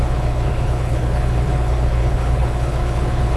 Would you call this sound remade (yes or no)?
yes